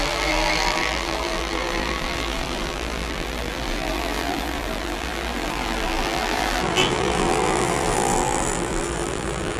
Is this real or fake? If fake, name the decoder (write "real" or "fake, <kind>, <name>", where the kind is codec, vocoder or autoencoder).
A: fake, vocoder, BigVGAN v2